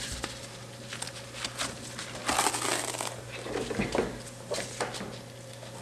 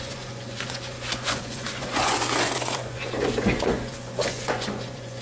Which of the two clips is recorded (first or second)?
first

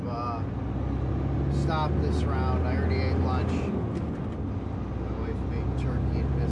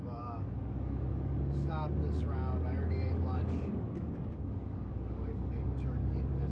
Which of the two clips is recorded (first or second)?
first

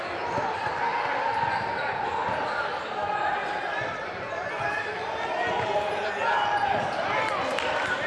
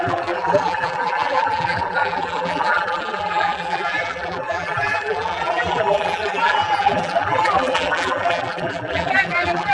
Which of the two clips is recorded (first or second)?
first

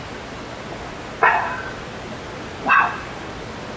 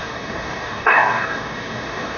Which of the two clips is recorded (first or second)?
first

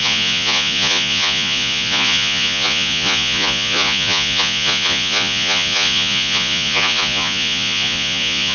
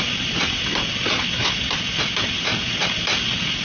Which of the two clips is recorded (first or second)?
second